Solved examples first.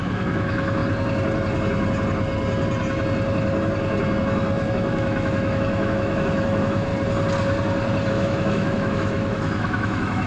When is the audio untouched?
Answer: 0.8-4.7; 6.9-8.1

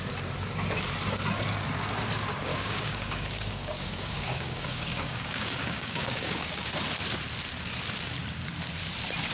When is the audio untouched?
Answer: 0.0-2.5; 6.7-9.3

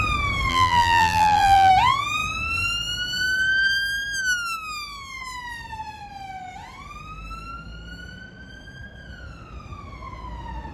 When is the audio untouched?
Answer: 0.0-0.5; 1.7-10.7

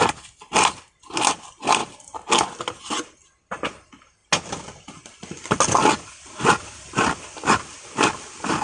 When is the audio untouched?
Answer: 0.0-8.6

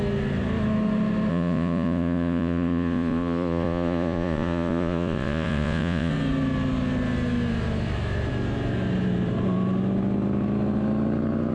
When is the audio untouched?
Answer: 0.0-1.3; 6.1-11.5

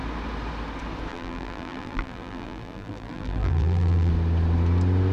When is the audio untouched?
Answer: 0.0-1.1; 4.1-5.1

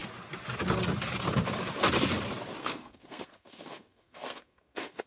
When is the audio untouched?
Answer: 0.0-2.6